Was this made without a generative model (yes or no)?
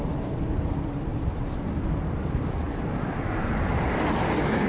yes